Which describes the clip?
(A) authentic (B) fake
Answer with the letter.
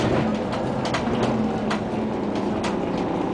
A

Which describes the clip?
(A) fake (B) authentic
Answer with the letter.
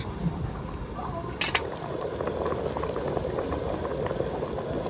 B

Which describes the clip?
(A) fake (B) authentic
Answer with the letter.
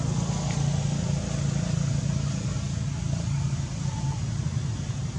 B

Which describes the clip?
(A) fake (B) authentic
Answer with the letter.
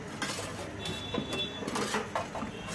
B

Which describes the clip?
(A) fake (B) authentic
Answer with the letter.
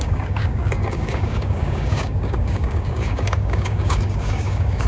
A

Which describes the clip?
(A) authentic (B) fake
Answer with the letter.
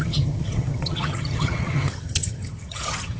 B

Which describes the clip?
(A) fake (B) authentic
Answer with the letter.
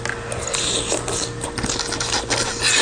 B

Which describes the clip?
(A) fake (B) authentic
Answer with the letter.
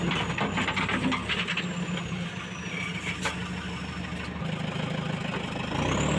B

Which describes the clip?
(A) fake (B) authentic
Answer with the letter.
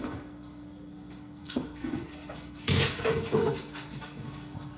A